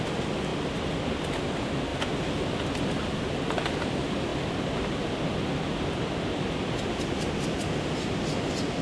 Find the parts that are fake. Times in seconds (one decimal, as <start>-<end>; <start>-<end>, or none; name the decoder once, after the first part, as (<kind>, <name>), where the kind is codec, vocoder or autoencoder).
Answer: none